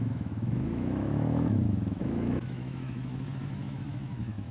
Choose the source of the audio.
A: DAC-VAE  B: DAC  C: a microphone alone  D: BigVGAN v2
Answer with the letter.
A